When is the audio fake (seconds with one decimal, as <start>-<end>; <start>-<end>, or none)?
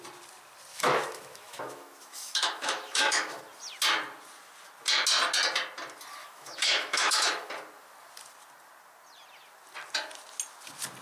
0.7-3.4; 6.2-7.5